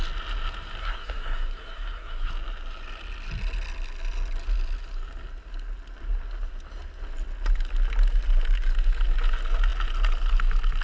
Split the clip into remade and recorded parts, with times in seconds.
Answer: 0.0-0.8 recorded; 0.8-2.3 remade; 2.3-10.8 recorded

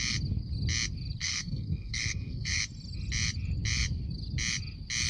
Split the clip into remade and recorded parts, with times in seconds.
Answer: 0.0-1.2 recorded; 1.2-2.6 remade; 2.6-5.1 recorded

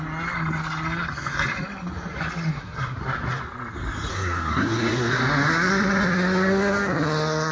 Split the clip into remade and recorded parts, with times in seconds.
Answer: 0.0-2.5 recorded; 2.5-3.0 remade; 3.0-4.1 recorded; 4.1-5.2 remade; 5.2-7.5 recorded

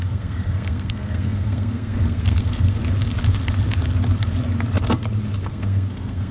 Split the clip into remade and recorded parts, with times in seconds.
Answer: 0.0-2.8 remade; 2.8-5.4 recorded; 5.4-6.3 remade

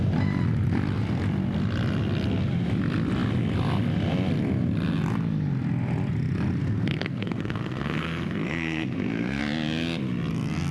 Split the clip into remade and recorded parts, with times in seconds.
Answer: 0.0-6.6 recorded; 6.6-9.4 remade; 9.4-10.7 recorded

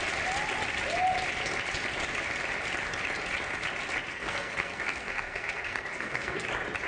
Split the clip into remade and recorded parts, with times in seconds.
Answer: 0.0-4.1 recorded; 4.1-6.5 remade; 6.5-6.9 recorded

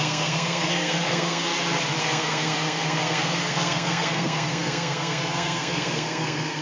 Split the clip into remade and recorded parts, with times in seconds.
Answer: 0.0-1.5 remade; 1.5-2.0 recorded; 2.0-6.6 remade